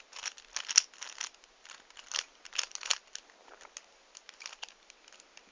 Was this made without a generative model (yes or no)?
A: yes